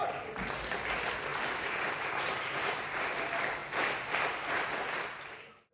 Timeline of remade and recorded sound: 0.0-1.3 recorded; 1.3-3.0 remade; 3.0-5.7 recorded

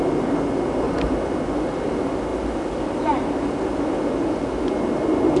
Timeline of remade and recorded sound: 0.0-5.4 recorded

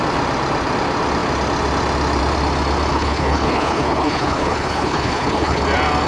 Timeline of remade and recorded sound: 0.0-2.9 recorded; 2.9-5.6 remade; 5.6-6.1 recorded

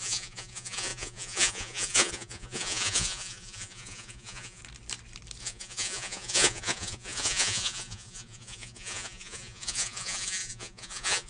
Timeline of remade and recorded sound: 0.0-4.6 remade; 4.6-5.4 recorded; 5.4-11.3 remade

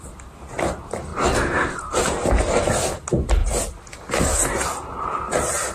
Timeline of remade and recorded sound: 0.0-3.4 remade; 3.4-5.2 recorded; 5.2-5.7 remade

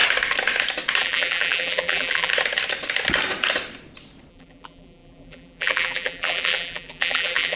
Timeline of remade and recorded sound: 0.0-1.0 recorded; 1.0-2.3 remade; 2.3-4.3 recorded; 4.3-7.6 remade

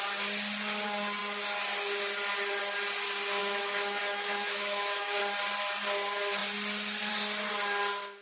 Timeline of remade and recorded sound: 0.0-3.4 recorded; 3.4-5.2 remade; 5.2-8.2 recorded